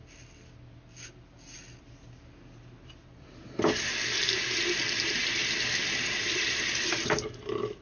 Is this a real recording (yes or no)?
yes